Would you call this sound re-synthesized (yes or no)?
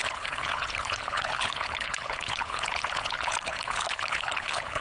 yes